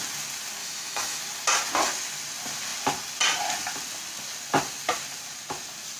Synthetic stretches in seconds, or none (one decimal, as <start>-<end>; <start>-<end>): 0.6-1.2